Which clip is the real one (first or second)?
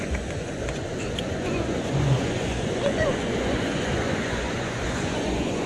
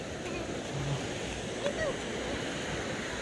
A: second